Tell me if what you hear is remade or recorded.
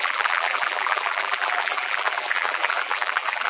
remade